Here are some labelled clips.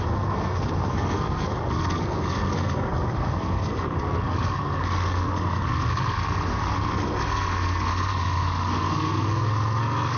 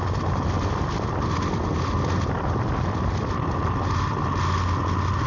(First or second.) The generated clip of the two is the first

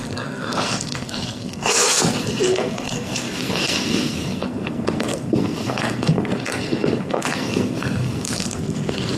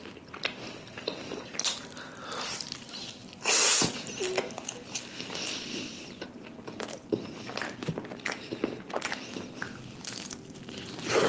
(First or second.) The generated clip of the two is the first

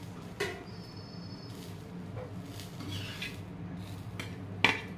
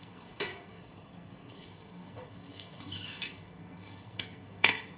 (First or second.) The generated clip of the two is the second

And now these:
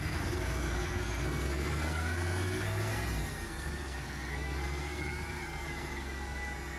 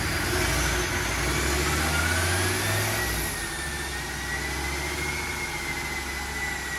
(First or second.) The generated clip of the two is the first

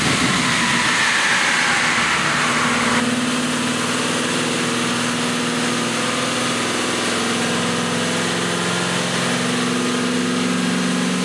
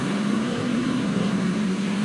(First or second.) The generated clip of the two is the second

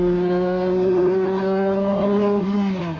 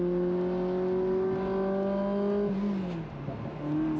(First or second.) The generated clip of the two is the first